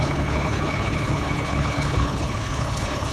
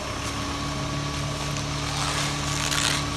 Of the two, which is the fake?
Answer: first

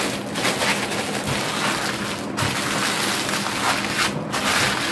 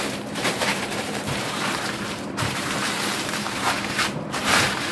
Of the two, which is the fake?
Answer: second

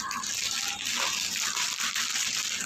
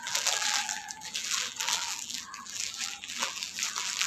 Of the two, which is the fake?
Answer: second